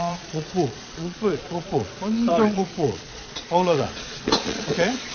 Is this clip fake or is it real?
fake